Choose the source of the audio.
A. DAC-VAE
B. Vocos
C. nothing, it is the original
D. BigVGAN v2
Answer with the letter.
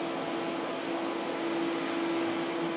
C